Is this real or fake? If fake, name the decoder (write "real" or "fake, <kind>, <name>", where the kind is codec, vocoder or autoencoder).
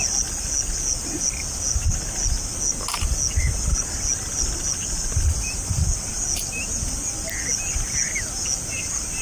real